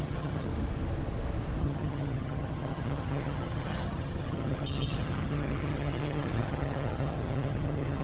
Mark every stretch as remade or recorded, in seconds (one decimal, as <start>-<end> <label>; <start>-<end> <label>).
0.0-0.5 remade; 0.5-1.6 recorded; 1.6-8.0 remade

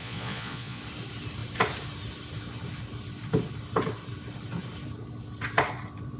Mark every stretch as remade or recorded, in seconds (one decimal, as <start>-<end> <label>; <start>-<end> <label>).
0.0-0.8 remade; 0.8-6.2 recorded

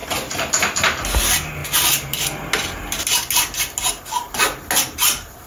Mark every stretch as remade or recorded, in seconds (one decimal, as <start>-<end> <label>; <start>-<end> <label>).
0.0-5.5 recorded

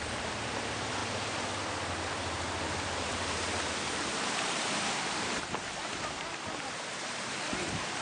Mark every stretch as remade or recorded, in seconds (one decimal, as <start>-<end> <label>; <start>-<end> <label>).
0.0-1.0 remade; 1.0-1.9 recorded; 1.9-8.0 remade

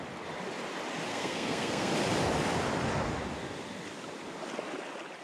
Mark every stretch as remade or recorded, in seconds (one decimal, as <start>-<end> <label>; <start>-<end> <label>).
0.0-1.1 recorded; 1.1-1.9 remade; 1.9-5.2 recorded

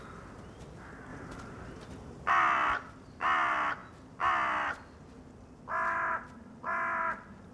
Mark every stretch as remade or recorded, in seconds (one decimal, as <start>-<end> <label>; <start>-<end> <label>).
0.0-7.5 recorded

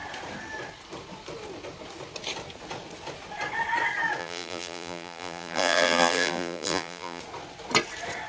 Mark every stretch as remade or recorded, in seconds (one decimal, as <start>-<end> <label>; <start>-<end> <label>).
0.0-4.2 recorded; 4.2-7.2 remade; 7.2-8.3 recorded

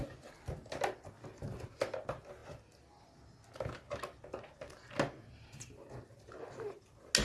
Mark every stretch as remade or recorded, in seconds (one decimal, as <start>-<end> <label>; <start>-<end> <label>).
0.0-7.2 recorded